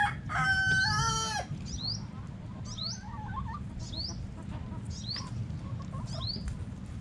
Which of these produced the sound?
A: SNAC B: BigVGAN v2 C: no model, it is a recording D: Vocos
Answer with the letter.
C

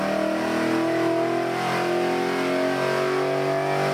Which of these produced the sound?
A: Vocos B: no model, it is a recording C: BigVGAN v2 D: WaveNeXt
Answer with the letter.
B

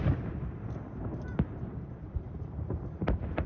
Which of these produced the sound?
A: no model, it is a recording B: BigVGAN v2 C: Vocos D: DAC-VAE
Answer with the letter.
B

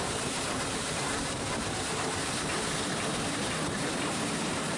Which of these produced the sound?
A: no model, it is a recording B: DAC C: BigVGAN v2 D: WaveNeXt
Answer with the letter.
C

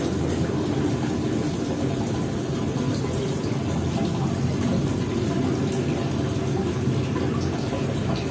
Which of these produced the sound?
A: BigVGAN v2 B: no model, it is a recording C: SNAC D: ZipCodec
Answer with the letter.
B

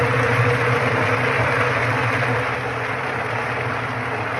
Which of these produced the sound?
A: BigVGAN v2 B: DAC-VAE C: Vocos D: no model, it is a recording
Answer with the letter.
D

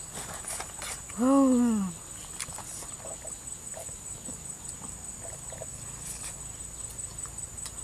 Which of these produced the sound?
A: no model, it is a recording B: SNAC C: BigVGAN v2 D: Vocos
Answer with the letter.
A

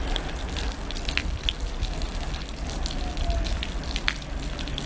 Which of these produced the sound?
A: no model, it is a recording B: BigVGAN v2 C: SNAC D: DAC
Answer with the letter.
A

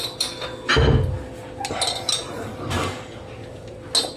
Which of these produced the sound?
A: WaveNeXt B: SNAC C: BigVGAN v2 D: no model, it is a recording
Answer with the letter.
D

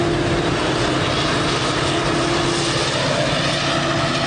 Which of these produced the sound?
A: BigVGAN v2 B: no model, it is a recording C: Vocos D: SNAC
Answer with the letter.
B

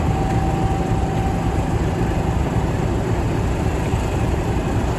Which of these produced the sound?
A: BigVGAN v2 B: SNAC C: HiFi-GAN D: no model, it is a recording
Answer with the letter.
A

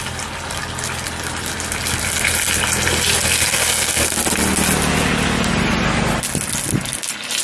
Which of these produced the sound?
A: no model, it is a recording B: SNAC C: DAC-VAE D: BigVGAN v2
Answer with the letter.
A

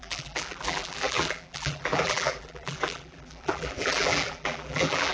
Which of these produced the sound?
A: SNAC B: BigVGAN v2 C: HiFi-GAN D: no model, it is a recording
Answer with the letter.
B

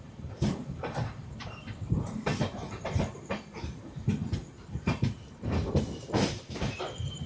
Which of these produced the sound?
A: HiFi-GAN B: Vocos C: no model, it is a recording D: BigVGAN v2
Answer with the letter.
D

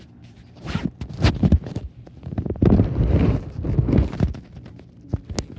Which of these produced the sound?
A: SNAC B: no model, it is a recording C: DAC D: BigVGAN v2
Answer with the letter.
B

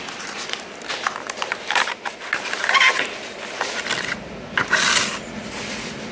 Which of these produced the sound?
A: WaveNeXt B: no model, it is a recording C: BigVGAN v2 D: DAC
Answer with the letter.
B